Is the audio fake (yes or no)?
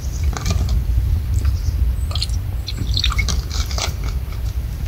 yes